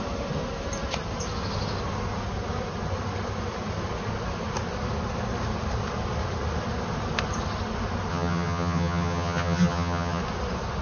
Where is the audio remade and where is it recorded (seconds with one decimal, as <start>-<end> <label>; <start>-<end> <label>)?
0.0-8.1 recorded; 8.1-10.2 remade; 10.2-10.8 recorded